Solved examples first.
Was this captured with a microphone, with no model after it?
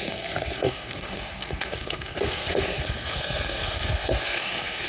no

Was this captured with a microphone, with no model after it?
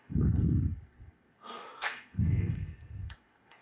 no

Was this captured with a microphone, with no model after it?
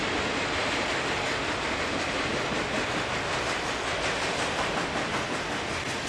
yes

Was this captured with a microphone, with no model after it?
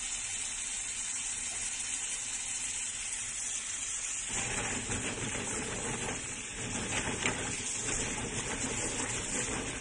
yes